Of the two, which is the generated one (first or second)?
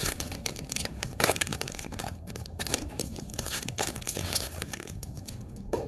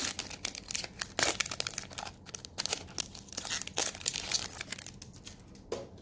first